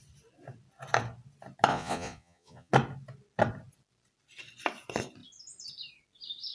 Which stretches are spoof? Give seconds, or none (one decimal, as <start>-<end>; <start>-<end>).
1.7-2.7